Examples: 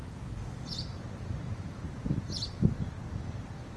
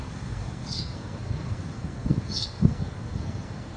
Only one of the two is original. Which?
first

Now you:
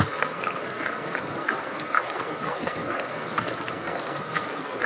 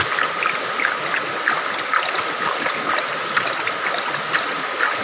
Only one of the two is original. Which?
second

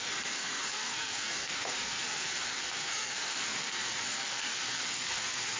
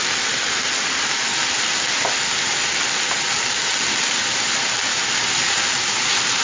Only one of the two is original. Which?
second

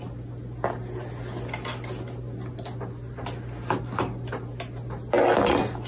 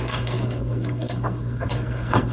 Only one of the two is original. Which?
first